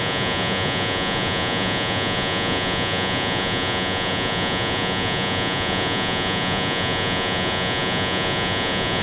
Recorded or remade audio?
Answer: remade